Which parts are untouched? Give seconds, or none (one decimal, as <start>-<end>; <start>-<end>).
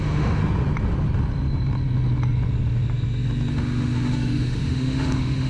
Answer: 0.4-3.5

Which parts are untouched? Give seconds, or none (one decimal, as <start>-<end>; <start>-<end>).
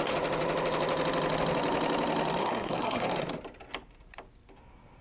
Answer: 0.0-2.4; 3.1-5.0